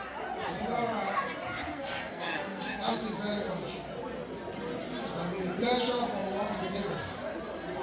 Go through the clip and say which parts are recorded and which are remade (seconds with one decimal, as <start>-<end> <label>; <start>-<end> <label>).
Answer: 0.0-1.7 recorded; 1.7-3.0 remade; 3.0-7.8 recorded